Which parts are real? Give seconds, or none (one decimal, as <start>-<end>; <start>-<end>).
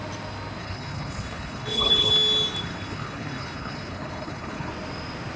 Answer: 0.0-0.6; 2.1-2.6; 4.7-5.4